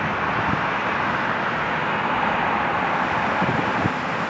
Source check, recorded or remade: recorded